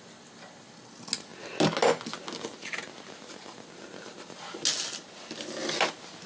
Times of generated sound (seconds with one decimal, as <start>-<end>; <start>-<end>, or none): none